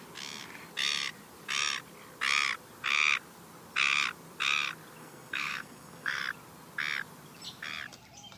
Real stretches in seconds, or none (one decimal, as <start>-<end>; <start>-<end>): 0.0-5.0; 6.2-8.4